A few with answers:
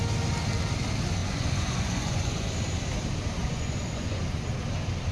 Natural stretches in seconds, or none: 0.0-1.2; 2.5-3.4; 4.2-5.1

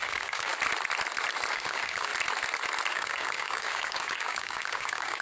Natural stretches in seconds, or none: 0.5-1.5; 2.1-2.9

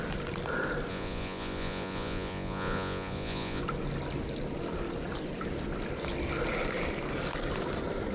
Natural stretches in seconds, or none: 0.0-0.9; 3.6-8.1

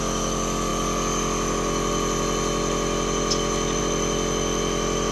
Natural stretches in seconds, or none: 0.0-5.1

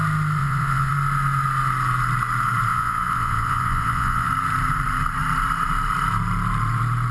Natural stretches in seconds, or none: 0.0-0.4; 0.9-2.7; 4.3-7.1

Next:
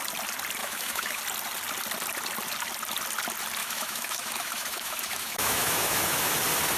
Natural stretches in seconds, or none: 0.0-0.6; 1.2-3.6; 6.3-6.8

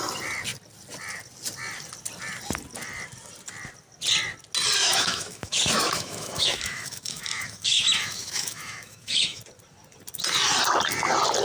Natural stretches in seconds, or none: 0.0-4.8; 9.4-11.4